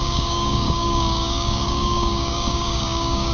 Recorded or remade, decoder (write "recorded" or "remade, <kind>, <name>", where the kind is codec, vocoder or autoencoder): remade, codec, DAC